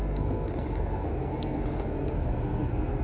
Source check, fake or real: fake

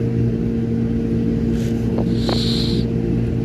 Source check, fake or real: real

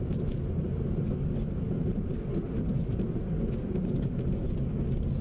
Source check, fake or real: real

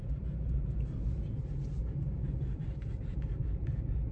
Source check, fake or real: fake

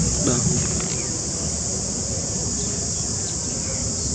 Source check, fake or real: real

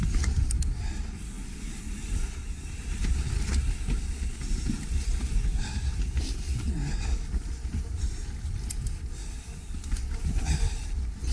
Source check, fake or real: real